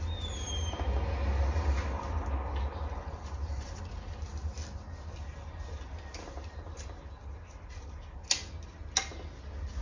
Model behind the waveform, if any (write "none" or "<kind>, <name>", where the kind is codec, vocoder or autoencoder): none